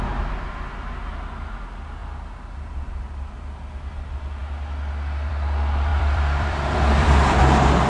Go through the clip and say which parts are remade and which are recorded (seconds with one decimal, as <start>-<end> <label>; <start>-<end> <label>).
0.0-5.9 recorded; 5.9-7.4 remade; 7.4-7.9 recorded

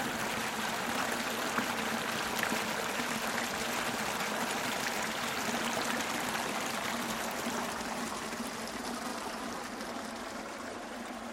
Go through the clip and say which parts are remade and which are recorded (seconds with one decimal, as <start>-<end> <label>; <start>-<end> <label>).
0.0-9.1 recorded; 9.1-9.8 remade; 9.8-11.3 recorded

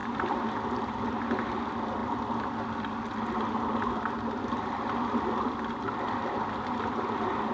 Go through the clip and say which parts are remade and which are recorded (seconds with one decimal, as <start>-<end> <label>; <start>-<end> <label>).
0.0-0.6 remade; 0.6-7.5 recorded